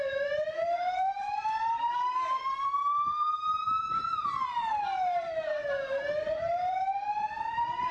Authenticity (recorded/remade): remade